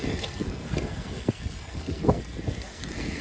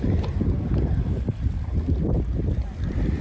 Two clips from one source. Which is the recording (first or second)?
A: second